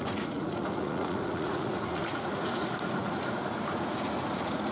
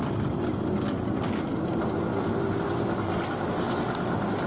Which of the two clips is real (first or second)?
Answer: second